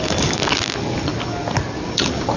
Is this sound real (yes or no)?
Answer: yes